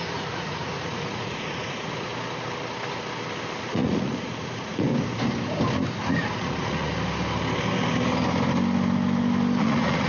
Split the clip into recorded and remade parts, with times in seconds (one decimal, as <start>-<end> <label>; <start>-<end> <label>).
0.0-2.1 remade; 2.1-3.7 recorded; 3.7-4.9 remade; 4.9-6.1 recorded; 6.1-6.9 remade; 6.9-9.6 recorded; 9.6-10.1 remade